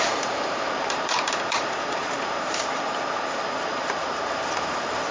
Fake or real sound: fake